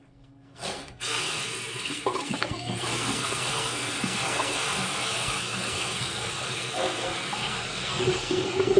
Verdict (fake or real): fake